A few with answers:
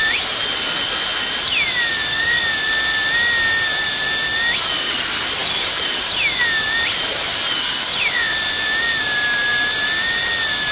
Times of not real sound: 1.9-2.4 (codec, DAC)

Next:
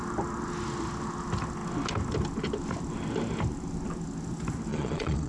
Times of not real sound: 4.7-5.3 (vocoder, Vocos)

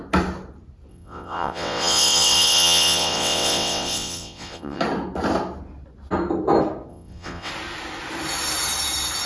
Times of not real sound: 0.9-4.8 (vocoder, WaveNeXt); 6.9-7.5

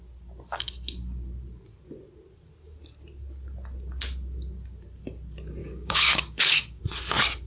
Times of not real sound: 5.6-6.8 (codec, DAC)

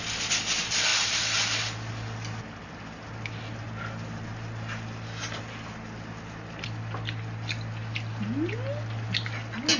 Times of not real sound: none

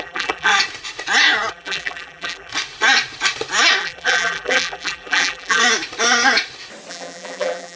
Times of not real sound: 0.0-0.5 (vocoder, BigVGAN v2); 1.5-2.5; 3.8-5.6; 6.9-7.8

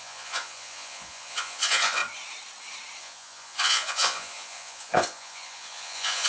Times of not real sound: 0.0-2.0 (vocoder, Vocos); 3.0-6.3

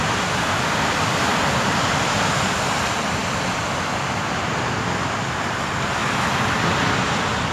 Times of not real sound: 0.0-6.0 (vocoder, BigVGAN v2); 7.0-7.5